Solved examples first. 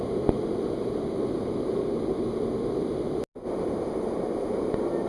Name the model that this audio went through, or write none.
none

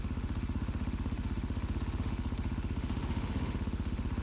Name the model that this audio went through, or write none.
autoencoder, DAC-VAE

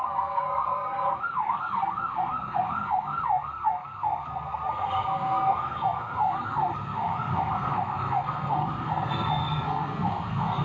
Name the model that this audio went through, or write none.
codec, SNAC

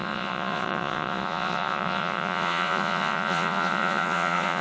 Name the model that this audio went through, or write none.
vocoder, Vocos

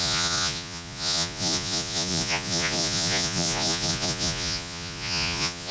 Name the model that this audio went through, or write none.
vocoder, Vocos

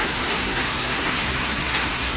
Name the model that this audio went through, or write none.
codec, SNAC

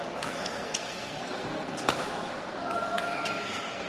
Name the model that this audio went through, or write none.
codec, SNAC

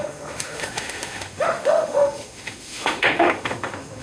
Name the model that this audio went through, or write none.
autoencoder, DAC-VAE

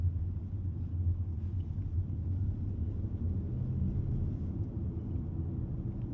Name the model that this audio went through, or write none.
none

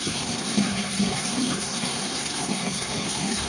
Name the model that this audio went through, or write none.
codec, SNAC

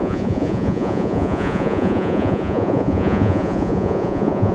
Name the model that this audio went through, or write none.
vocoder, Vocos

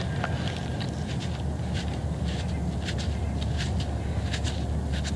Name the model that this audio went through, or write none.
none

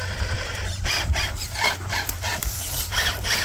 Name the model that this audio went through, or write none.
vocoder, BigVGAN v2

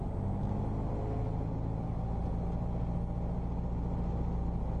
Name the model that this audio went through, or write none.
none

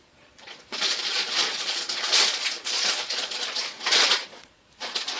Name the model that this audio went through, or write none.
vocoder, Vocos